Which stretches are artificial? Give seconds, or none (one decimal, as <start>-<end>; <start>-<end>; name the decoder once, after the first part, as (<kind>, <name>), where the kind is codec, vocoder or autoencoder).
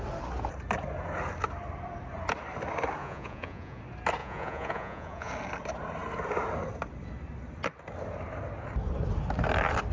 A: 3.0-3.8 (vocoder, Vocos); 4.2-5.3